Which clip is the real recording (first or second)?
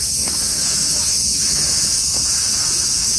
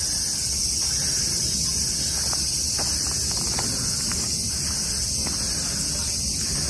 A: second